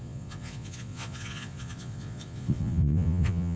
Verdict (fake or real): fake